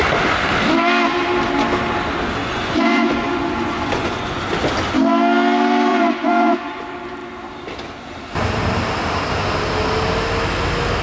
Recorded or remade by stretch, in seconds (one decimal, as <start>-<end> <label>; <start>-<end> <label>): 0.0-2.4 recorded; 2.4-4.4 remade; 4.4-5.9 recorded; 5.9-6.8 remade; 6.8-11.0 recorded